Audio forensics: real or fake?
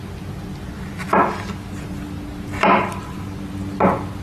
real